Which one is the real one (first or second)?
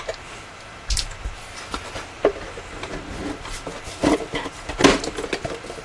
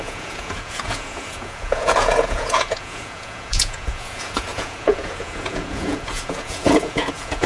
first